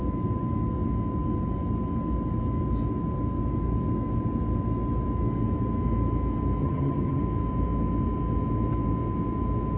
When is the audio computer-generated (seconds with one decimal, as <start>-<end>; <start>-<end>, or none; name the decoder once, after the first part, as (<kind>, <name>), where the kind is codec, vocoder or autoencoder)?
6.6-7.2 (vocoder, HiFi-GAN)